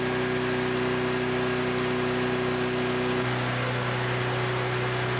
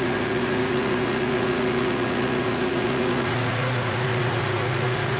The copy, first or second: second